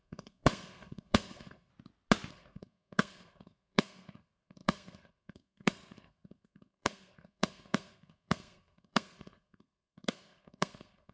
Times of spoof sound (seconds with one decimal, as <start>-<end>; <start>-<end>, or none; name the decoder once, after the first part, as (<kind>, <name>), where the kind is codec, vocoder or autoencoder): 0.0-1.7 (codec, SNAC); 2.3-11.1